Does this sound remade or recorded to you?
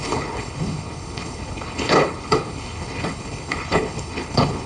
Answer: remade